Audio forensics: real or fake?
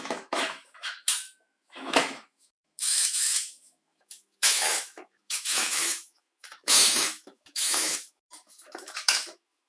fake